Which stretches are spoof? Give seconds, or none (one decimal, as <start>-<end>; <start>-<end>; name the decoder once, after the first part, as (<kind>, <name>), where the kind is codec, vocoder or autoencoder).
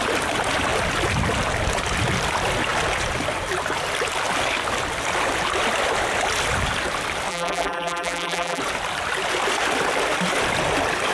7.3-8.6 (vocoder, BigVGAN v2)